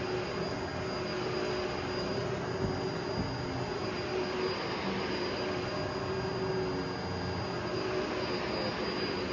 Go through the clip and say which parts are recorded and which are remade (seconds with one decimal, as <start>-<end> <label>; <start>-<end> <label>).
0.0-9.3 recorded